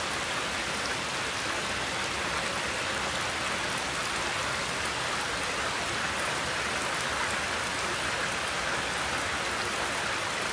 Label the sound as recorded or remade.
recorded